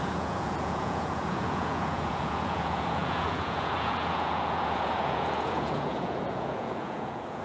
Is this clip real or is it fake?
fake